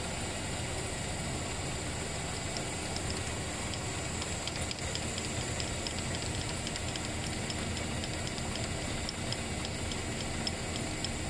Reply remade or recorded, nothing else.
recorded